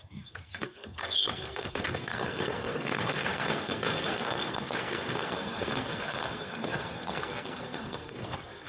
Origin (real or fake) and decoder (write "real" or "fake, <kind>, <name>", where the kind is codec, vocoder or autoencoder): fake, codec, SNAC